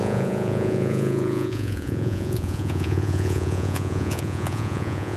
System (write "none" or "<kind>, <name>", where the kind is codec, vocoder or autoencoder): vocoder, Vocos